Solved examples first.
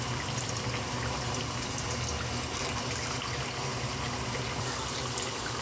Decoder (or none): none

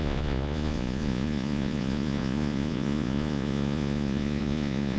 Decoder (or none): vocoder, Vocos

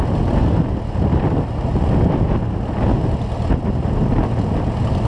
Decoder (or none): none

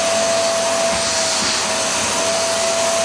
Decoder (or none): none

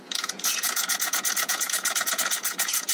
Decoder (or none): vocoder, Vocos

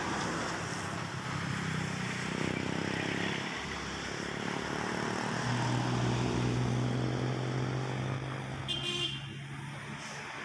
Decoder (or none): none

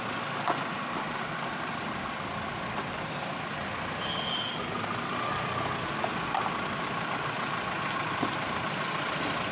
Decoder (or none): none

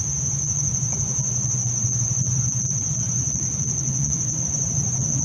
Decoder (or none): vocoder, Vocos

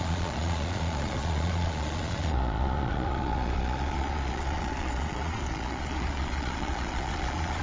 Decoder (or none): vocoder, Vocos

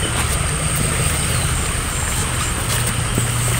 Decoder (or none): none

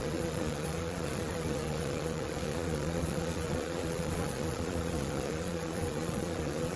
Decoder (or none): vocoder, Vocos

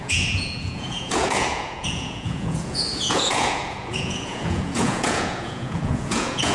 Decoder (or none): vocoder, Vocos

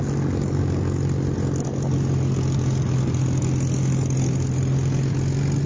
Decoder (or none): none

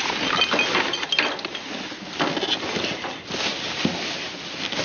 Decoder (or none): none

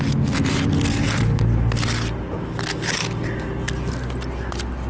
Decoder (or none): none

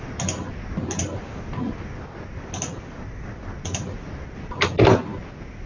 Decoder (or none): none